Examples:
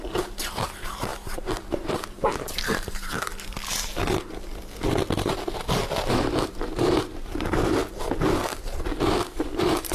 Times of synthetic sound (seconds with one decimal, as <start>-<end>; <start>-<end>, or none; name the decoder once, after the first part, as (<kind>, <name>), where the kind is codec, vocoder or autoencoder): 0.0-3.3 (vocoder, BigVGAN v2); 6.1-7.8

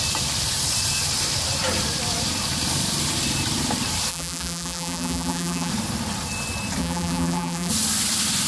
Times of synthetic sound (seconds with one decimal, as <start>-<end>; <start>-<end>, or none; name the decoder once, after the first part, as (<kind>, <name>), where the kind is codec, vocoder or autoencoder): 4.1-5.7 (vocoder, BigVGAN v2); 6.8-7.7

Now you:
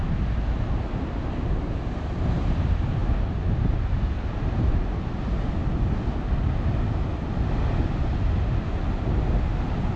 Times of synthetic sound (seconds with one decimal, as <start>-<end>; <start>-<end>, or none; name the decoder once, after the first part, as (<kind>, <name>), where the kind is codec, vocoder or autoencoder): 3.0-5.2 (vocoder, BigVGAN v2)

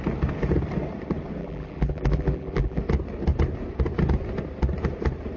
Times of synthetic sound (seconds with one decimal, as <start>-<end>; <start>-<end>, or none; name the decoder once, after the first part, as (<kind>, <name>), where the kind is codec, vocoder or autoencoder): 1.4-2.8 (vocoder, BigVGAN v2)

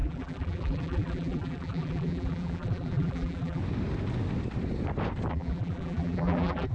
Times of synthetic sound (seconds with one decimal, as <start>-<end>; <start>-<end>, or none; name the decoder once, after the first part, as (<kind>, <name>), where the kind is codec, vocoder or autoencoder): 0.0-3.6 (vocoder, BigVGAN v2); 5.3-6.7

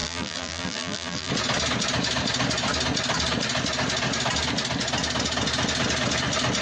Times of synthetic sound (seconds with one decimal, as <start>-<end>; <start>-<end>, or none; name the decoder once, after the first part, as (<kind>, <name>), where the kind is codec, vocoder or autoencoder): 0.0-1.3 (vocoder, BigVGAN v2)

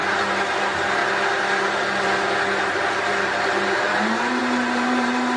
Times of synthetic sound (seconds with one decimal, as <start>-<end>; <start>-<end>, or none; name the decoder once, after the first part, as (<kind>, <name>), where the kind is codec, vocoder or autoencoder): 0.6-1.0 (vocoder, BigVGAN v2); 2.6-5.4

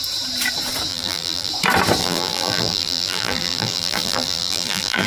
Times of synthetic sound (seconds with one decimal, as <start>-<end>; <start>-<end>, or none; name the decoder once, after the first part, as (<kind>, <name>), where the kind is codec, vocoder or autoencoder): 0.9-1.5 (vocoder, BigVGAN v2); 2.0-5.1